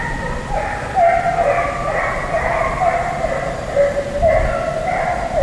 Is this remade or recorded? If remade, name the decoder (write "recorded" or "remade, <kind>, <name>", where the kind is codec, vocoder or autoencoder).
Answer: recorded